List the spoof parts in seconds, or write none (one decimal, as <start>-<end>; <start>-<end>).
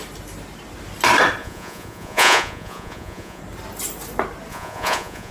1.4-3.4; 4.5-5.3